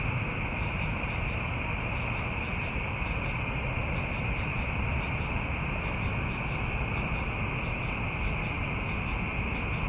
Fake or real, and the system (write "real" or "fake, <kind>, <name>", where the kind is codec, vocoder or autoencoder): real